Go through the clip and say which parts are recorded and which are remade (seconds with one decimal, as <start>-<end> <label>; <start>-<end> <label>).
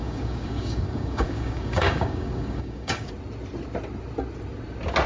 0.0-3.1 remade; 3.1-5.1 recorded